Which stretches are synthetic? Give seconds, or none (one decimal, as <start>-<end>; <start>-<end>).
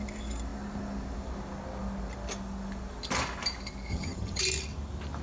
3.9-4.4